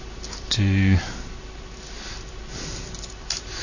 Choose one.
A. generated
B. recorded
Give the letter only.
B